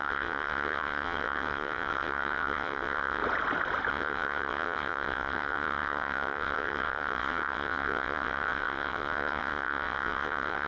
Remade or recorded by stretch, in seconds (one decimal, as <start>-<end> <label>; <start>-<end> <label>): 0.0-3.2 remade; 3.2-3.9 recorded; 3.9-10.7 remade